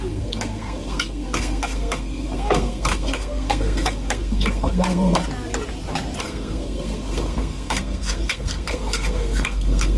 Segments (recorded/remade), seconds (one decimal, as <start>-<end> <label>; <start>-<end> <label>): 0.0-5.2 remade; 5.2-6.2 recorded; 6.2-10.0 remade